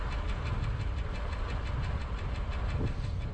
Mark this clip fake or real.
real